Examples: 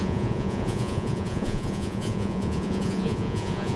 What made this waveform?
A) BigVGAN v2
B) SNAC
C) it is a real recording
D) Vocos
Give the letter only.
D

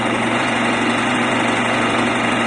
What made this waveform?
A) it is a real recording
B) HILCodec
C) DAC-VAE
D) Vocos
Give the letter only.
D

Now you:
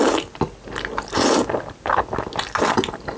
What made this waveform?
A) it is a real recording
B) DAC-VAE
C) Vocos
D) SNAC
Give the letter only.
A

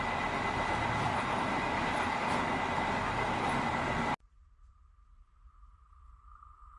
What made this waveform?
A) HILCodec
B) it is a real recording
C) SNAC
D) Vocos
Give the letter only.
B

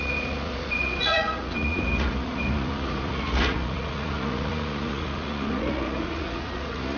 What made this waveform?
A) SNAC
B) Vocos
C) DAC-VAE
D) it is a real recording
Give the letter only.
B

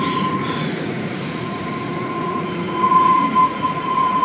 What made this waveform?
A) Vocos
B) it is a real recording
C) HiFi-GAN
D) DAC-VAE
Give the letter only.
A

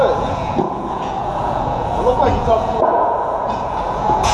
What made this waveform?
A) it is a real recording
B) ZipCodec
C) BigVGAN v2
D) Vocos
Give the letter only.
D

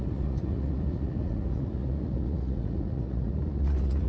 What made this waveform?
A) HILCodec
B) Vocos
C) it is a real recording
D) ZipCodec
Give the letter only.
B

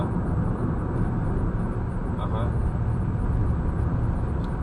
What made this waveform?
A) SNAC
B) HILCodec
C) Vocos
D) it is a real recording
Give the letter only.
D